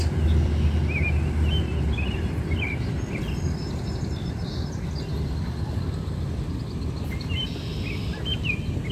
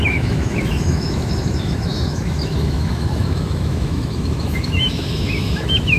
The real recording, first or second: first